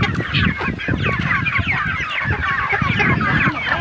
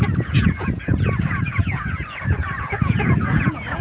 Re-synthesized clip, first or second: second